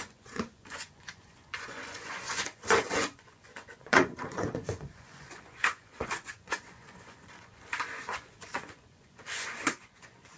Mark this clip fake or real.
fake